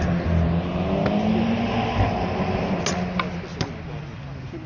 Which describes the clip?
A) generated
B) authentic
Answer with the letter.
B